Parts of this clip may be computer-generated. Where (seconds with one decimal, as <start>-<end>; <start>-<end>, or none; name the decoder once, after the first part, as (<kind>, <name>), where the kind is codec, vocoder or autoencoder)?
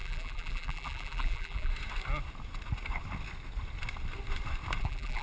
0.0-1.7 (vocoder, BigVGAN v2); 4.8-5.2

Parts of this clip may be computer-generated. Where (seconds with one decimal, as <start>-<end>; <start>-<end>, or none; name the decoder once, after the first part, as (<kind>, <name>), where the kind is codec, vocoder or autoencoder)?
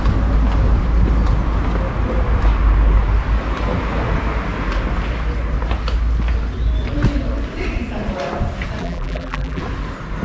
8.8-9.6 (vocoder, BigVGAN v2)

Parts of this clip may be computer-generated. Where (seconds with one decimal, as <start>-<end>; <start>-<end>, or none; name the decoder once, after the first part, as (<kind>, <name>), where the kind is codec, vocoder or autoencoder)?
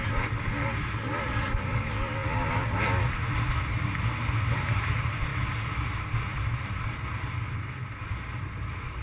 none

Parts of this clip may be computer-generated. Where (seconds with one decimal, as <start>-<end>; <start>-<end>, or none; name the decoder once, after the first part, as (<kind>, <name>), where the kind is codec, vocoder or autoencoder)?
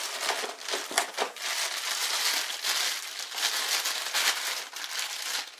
none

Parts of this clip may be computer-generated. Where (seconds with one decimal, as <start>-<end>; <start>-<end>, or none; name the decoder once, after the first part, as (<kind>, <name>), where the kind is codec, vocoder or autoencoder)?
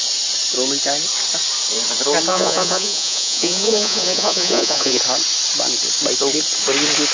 2.3-5.0 (vocoder, Vocos)